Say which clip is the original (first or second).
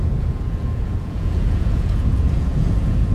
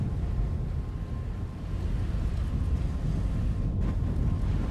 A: second